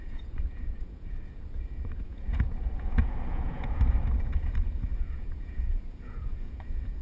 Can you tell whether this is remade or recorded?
remade